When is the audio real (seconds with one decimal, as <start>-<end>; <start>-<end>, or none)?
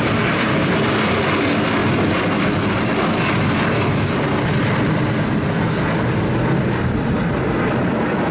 0.0-8.3